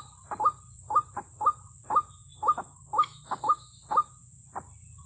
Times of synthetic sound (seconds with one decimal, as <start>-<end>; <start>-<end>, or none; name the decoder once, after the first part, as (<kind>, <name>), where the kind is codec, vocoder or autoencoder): 2.2-3.7 (autoencoder, DAC-VAE)